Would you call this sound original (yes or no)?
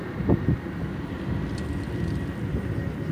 no